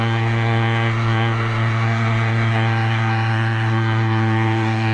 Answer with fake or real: fake